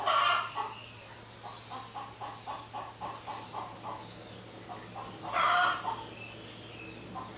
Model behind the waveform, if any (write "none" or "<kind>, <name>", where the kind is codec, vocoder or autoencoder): none